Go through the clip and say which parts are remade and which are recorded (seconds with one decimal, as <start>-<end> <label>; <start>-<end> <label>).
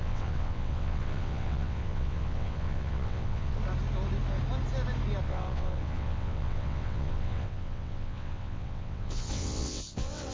0.0-3.6 remade; 3.6-5.2 recorded; 5.2-10.3 remade